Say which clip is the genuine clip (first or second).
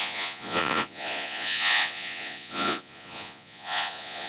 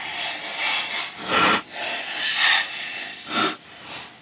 second